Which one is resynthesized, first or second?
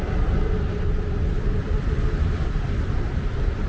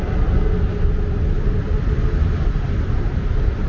first